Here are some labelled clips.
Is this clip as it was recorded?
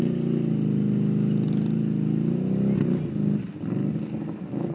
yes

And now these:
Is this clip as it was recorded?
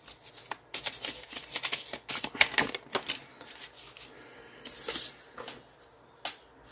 yes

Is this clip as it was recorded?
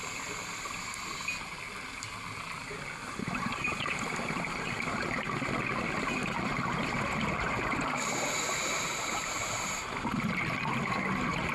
yes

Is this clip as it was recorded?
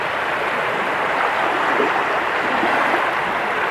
yes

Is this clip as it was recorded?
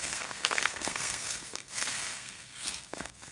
no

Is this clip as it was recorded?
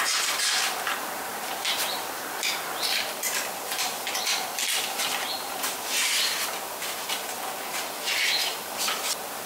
no